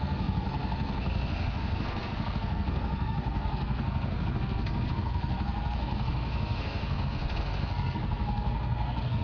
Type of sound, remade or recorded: remade